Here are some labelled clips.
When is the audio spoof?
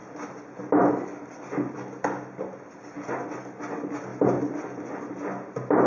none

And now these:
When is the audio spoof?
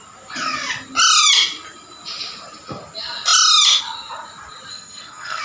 4.7-5.4 (codec, SNAC)